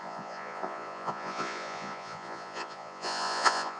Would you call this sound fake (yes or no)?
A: yes